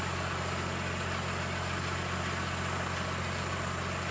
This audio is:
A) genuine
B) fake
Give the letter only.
A